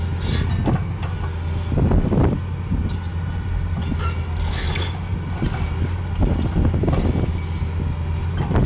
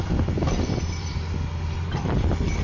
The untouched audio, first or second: first